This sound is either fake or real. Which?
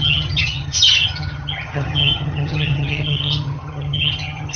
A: fake